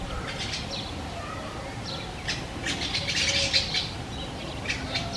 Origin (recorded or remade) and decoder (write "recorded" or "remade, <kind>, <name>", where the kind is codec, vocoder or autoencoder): recorded